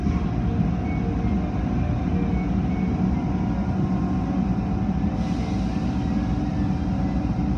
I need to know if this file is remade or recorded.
recorded